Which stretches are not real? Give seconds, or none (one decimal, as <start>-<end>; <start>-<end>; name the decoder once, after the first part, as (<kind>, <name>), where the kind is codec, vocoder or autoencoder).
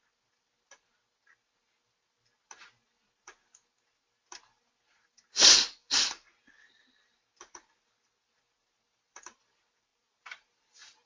none